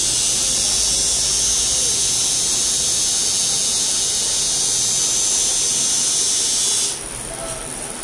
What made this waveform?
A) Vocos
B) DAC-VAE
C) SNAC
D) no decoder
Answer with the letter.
D